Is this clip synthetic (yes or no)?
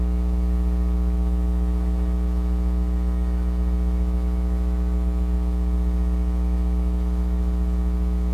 yes